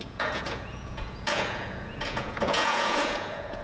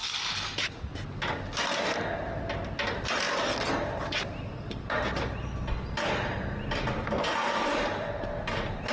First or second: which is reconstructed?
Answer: first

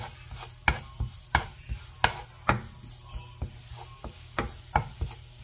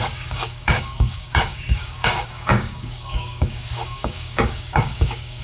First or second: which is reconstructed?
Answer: second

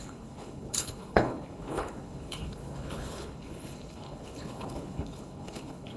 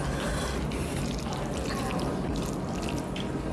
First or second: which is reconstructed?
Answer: first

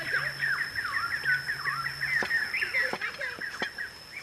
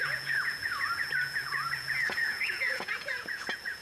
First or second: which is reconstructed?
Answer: second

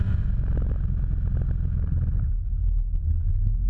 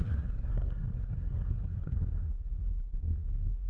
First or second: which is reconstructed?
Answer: second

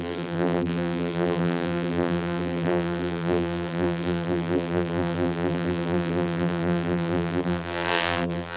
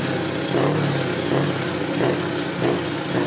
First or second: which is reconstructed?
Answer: first